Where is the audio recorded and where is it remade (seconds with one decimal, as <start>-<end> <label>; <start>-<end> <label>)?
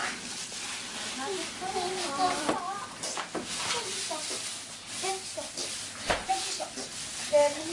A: 0.0-4.1 remade; 4.1-7.7 recorded